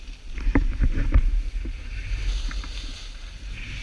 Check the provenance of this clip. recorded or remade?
remade